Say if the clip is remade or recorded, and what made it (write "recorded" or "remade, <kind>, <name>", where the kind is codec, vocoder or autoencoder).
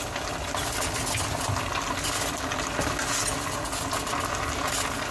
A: recorded